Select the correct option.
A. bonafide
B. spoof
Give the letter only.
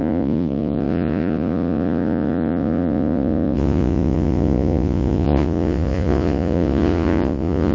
B